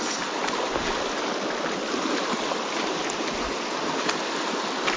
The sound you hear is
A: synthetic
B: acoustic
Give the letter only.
A